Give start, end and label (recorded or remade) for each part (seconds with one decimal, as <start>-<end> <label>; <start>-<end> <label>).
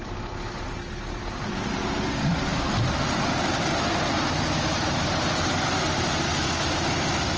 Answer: 0.0-7.4 recorded